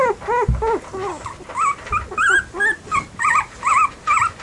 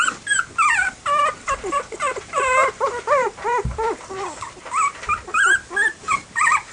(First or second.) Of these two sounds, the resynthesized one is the second